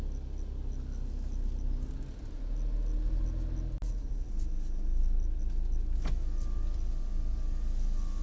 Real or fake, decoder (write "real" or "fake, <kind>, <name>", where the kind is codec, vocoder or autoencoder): real